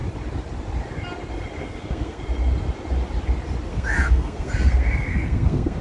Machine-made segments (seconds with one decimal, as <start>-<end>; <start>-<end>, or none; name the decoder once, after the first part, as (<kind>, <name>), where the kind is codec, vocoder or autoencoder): 1.6-2.2 (codec, SNAC); 3.7-5.8